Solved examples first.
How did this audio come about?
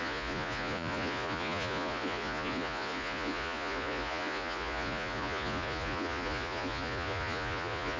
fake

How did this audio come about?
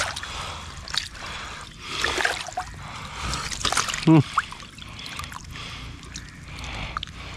real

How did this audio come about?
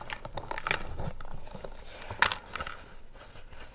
real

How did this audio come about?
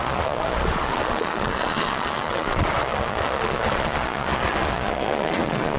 fake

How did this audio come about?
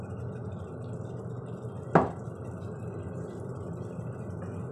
fake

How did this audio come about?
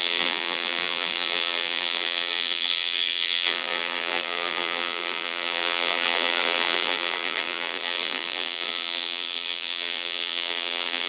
fake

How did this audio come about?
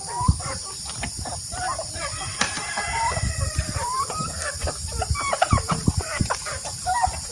fake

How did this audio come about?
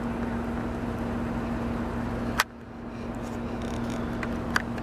real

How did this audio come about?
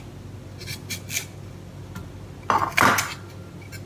real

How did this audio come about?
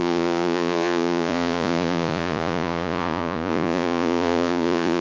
fake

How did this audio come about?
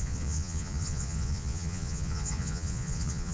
fake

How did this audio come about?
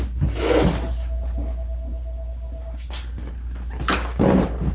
real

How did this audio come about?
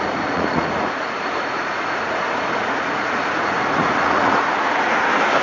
fake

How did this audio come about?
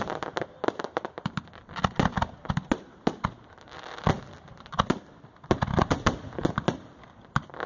real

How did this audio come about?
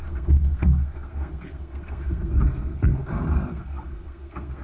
fake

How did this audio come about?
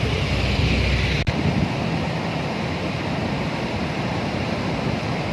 fake